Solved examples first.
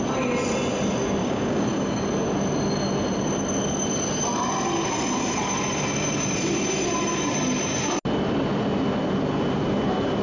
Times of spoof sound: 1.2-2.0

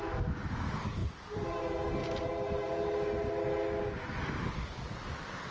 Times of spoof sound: 1.0-1.6; 2.0-2.7

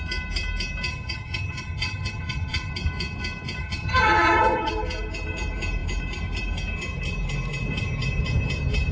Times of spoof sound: 0.9-2.7; 3.6-4.7

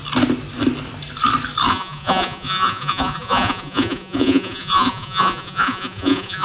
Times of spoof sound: 1.7-6.4

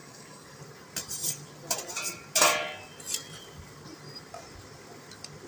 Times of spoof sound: 0.0-0.6

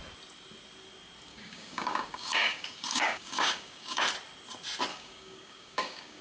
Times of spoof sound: 1.3-4.0; 4.9-6.2

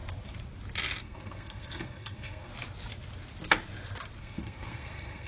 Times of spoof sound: 1.0-2.5; 4.2-5.3

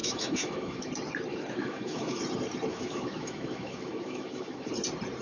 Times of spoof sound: 0.0-0.9; 1.3-2.2; 2.7-4.7